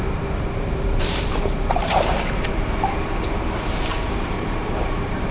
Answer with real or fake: fake